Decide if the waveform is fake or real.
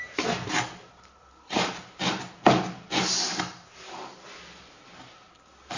real